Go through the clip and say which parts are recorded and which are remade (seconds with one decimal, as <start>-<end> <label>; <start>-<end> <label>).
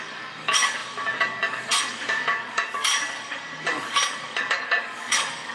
0.0-5.5 remade